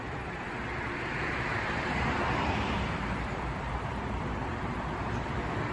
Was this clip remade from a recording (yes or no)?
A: yes